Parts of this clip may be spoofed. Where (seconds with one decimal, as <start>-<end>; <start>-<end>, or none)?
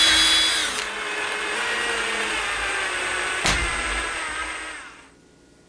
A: none